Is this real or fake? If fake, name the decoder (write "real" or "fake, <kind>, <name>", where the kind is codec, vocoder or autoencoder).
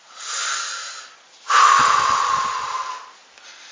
real